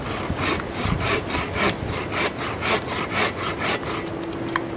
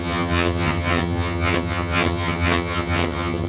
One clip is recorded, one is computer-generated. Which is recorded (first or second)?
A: first